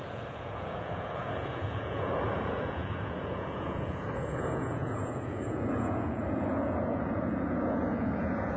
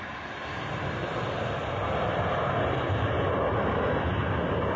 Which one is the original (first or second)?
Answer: second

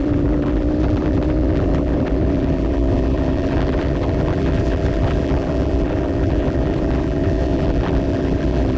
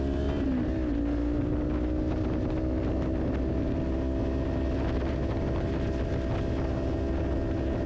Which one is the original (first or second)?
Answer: second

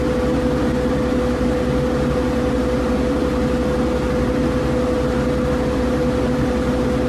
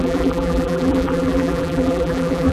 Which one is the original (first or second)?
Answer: first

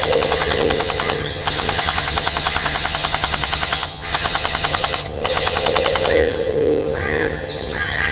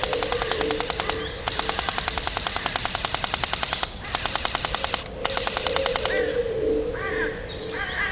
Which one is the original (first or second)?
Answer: second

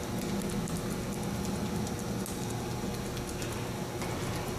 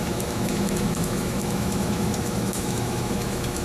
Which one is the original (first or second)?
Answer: first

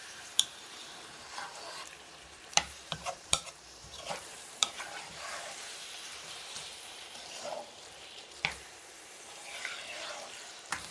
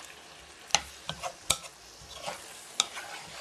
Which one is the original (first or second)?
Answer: second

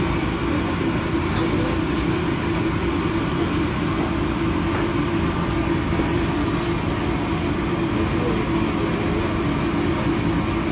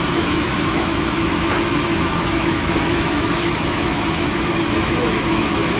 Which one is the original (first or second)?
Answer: first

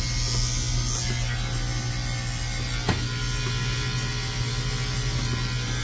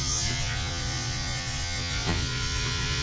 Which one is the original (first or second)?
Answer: first